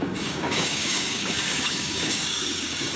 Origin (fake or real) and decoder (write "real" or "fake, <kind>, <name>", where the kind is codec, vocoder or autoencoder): fake, codec, DAC